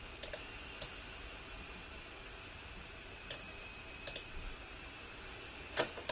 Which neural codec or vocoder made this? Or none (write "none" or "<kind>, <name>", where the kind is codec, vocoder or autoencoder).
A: vocoder, BigVGAN v2